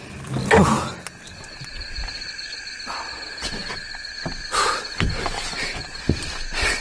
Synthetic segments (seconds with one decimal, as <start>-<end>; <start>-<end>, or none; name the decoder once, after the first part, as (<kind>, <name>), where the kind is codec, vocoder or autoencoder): none